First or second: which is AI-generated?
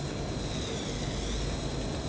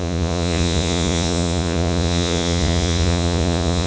second